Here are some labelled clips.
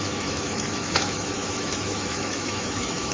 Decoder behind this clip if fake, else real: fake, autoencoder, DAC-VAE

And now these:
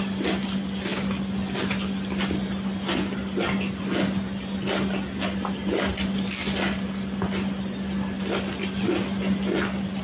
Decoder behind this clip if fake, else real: real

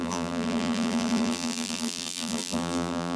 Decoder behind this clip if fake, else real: fake, vocoder, BigVGAN v2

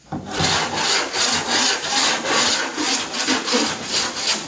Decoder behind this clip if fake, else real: real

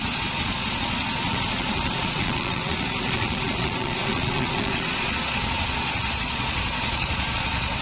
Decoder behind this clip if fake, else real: fake, vocoder, Vocos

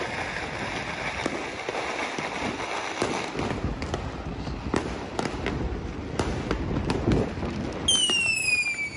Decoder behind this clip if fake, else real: real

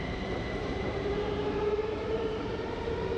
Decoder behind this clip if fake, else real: fake, vocoder, BigVGAN v2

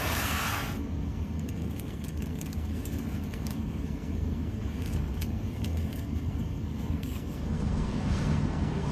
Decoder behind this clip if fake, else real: fake, codec, SNAC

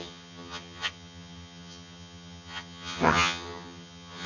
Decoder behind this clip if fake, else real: fake, vocoder, HiFi-GAN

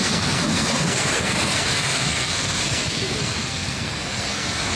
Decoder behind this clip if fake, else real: fake, codec, SNAC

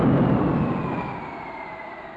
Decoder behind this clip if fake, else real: real